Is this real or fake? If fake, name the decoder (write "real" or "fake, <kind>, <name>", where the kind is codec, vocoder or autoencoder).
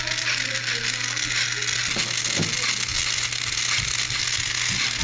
real